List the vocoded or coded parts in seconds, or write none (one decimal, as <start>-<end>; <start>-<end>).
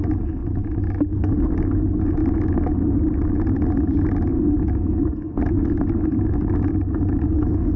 none